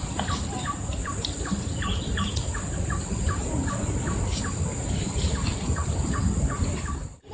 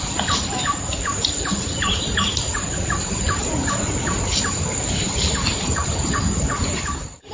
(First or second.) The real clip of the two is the first